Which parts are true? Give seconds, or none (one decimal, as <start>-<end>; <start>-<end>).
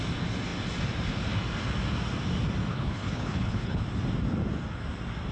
0.0-2.7; 3.8-5.3